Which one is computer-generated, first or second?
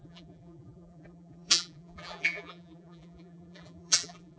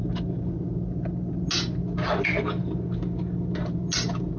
first